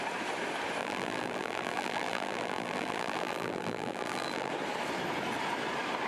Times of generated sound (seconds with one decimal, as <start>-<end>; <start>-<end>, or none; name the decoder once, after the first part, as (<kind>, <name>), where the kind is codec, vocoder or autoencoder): 0.8-4.5 (vocoder, BigVGAN v2)